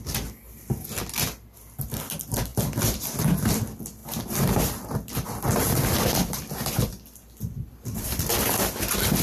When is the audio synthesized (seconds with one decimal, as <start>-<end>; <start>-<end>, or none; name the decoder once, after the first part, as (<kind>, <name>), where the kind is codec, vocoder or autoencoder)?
2.5-3.0 (vocoder, BigVGAN v2); 4.0-8.3